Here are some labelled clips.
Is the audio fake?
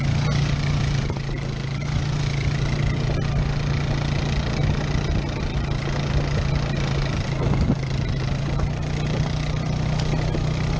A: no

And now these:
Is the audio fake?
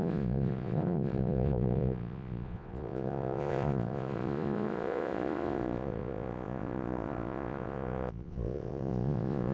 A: yes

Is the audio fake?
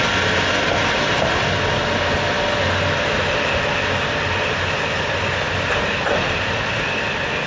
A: no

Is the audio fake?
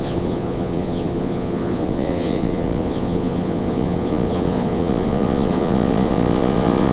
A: yes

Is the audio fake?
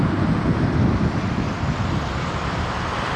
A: no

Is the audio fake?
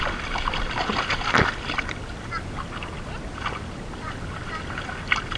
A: no